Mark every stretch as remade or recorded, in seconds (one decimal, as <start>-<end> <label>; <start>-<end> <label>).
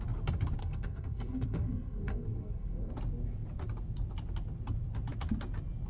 0.0-0.6 recorded; 0.6-2.9 remade; 2.9-5.9 recorded